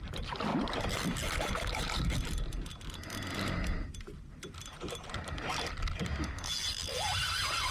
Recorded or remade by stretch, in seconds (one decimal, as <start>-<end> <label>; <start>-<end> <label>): 0.0-7.7 recorded